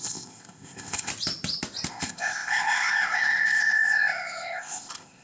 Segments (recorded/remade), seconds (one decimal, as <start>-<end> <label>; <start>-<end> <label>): 0.0-1.1 remade; 1.1-1.9 recorded; 1.9-5.2 remade